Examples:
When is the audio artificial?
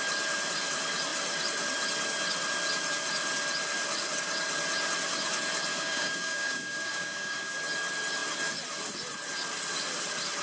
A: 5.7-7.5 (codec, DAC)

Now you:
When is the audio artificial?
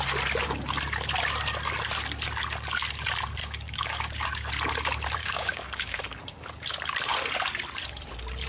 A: 3.4-4.5 (codec, DAC); 5.2-6.0